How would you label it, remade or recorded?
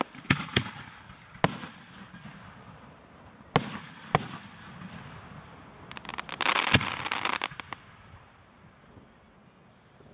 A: recorded